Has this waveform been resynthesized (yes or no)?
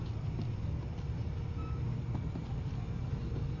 no